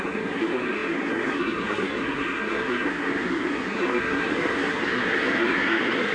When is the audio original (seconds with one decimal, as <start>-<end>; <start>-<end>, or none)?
none